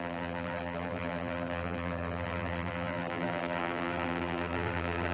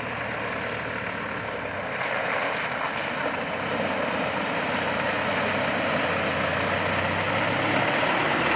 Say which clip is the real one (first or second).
second